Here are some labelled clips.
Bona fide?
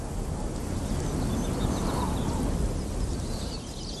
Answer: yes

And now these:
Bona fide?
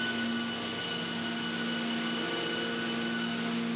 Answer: yes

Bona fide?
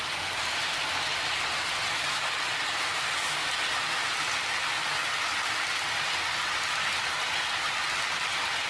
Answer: yes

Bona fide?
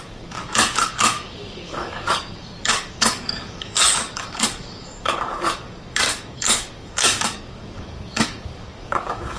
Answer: no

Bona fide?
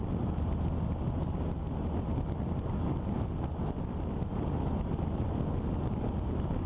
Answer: yes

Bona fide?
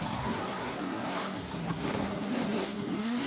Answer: no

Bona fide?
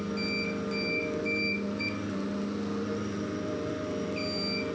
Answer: yes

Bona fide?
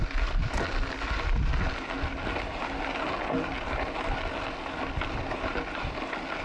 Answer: yes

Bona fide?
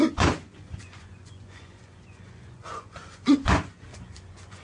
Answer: no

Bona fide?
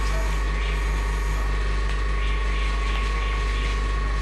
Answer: yes